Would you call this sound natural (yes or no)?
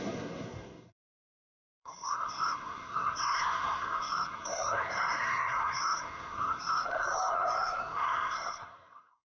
no